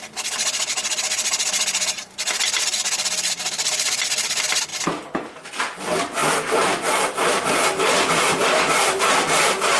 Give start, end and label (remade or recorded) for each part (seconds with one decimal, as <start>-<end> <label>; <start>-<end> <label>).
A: 0.0-9.8 recorded